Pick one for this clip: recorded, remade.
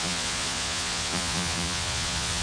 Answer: remade